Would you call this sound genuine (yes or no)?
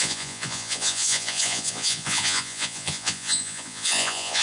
no